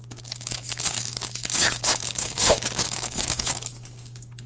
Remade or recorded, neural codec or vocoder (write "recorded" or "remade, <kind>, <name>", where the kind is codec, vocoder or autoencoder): remade, codec, DAC